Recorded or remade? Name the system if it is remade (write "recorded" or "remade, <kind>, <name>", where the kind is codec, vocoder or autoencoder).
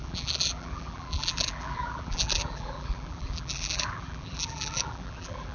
remade, vocoder, BigVGAN v2